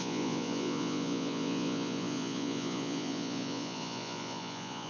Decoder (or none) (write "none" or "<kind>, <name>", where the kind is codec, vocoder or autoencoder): vocoder, Vocos